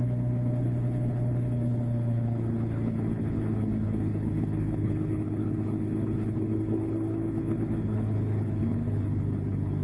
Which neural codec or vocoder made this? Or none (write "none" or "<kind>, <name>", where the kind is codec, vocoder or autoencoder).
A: codec, HILCodec